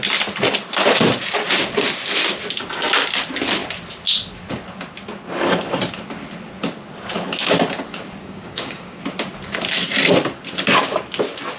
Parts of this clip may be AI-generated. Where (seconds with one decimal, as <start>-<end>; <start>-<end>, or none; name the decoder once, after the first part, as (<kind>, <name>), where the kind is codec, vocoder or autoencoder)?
8.2-9.0 (codec, DAC)